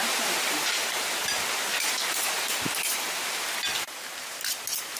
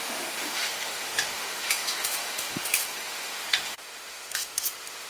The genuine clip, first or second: first